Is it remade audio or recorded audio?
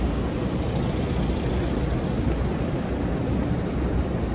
recorded